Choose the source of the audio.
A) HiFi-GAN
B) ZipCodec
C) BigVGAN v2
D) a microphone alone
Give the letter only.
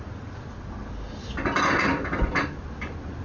D